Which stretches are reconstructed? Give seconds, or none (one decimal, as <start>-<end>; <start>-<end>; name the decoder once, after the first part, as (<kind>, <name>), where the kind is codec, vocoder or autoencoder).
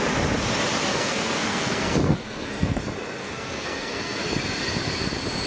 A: 0.9-2.8 (codec, SNAC); 3.2-4.2